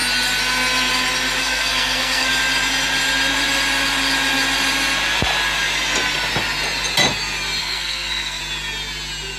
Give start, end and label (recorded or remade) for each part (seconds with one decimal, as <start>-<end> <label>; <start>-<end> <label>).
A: 0.0-1.4 recorded; 1.4-2.3 remade; 2.3-7.6 recorded; 7.6-8.4 remade; 8.4-9.4 recorded